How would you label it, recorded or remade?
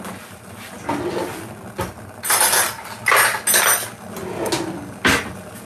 recorded